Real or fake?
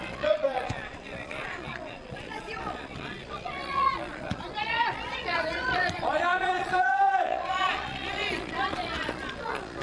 fake